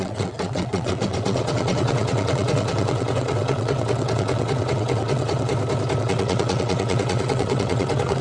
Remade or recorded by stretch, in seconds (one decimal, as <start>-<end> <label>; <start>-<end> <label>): 0.0-5.5 remade; 5.5-6.0 recorded; 6.0-8.2 remade